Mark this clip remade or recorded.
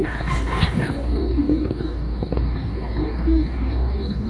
remade